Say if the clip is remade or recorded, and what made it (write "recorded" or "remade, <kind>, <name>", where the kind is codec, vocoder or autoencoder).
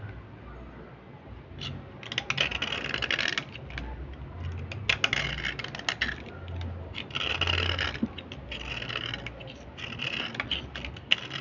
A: recorded